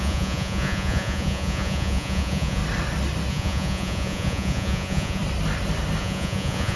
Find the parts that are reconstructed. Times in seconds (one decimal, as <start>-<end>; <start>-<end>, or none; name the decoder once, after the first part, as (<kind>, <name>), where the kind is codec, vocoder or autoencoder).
0.0-2.6 (vocoder, Vocos); 3.3-5.2; 6.0-6.8